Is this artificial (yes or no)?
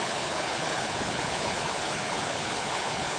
yes